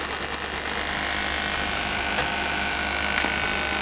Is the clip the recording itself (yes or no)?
yes